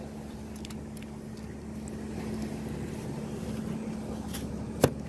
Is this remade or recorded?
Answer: recorded